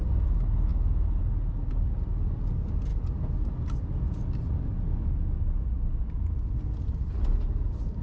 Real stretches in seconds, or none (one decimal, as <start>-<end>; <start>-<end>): 0.0-8.0